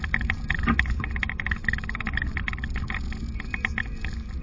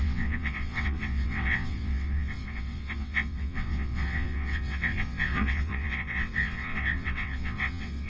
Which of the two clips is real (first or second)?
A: first